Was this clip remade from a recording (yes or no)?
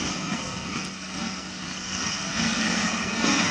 yes